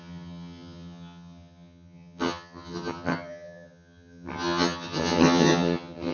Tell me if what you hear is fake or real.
fake